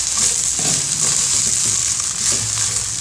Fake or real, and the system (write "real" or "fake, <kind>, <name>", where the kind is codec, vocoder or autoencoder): real